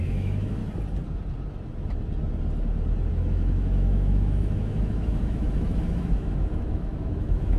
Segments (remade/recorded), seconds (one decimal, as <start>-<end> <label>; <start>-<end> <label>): 0.0-0.6 remade; 0.6-3.1 recorded; 3.1-7.6 remade